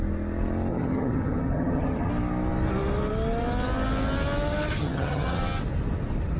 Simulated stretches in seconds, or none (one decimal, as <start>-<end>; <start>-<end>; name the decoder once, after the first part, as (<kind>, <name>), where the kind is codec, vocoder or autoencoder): 0.7-2.1 (vocoder, HiFi-GAN); 4.8-5.4